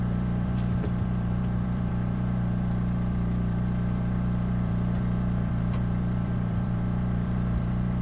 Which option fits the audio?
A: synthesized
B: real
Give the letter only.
A